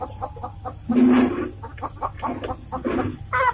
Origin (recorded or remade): recorded